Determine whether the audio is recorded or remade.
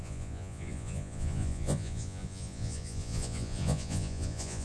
remade